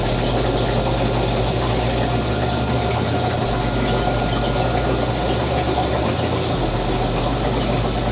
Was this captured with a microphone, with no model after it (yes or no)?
yes